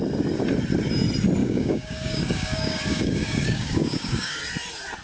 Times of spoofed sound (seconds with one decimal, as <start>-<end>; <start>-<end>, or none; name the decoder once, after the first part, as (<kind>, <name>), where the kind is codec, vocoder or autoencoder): 1.4-4.4 (codec, DAC)